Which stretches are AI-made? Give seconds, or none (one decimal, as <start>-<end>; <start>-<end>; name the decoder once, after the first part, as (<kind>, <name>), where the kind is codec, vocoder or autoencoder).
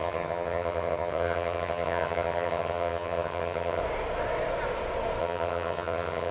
0.0-3.8 (vocoder, HiFi-GAN); 5.2-6.3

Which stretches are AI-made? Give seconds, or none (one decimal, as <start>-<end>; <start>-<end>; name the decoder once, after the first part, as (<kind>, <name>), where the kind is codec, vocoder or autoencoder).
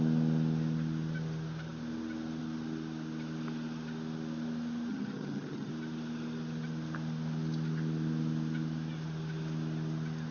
4.9-5.7 (vocoder, HiFi-GAN)